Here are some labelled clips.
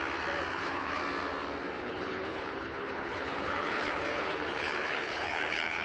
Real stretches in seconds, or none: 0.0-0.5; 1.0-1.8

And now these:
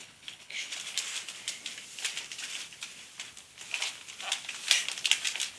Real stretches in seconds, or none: 0.8-5.6

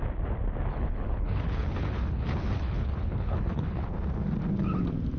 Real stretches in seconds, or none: 0.0-0.7; 3.8-5.2

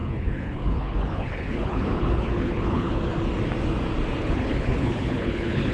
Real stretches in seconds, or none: 3.1-4.2